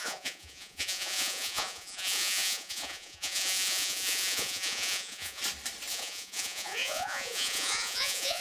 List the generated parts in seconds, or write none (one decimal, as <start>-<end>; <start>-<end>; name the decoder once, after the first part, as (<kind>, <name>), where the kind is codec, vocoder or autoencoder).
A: 0.0-5.4 (vocoder, Vocos); 5.9-8.4